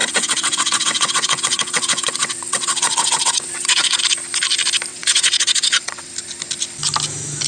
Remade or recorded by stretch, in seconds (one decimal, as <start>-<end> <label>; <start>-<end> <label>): 0.0-4.0 remade; 4.0-4.9 recorded; 4.9-6.1 remade; 6.1-7.5 recorded